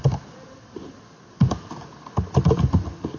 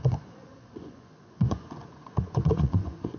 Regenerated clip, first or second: second